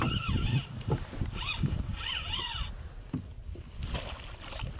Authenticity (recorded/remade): recorded